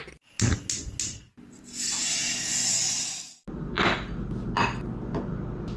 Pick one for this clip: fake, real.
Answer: real